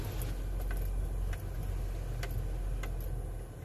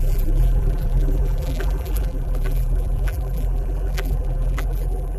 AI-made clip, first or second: second